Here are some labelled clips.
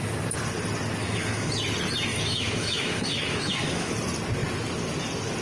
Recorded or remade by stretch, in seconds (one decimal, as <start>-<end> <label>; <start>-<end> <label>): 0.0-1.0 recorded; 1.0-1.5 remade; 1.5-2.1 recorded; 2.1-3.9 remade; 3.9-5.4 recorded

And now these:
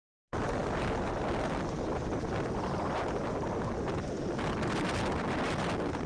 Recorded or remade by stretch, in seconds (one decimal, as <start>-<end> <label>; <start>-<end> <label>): 0.0-6.1 recorded

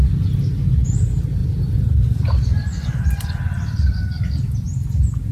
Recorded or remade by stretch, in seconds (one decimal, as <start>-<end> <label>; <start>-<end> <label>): 0.0-5.3 recorded